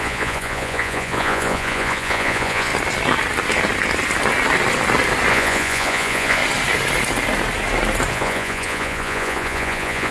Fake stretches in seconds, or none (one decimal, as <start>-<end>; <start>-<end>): 0.0-2.7; 5.3-6.4; 8.1-10.1